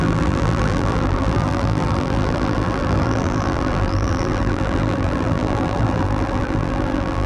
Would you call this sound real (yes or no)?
no